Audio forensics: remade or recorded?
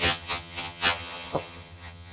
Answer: remade